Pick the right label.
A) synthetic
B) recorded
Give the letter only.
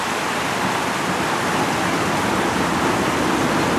B